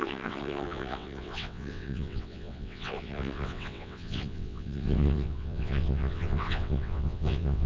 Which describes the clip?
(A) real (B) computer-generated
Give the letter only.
B